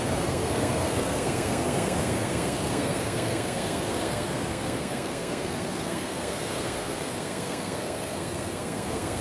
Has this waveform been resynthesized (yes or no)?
yes